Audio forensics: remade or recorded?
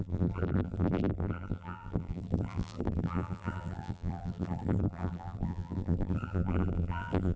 remade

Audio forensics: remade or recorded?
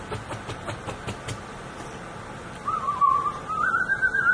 recorded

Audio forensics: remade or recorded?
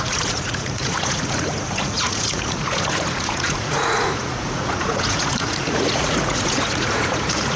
remade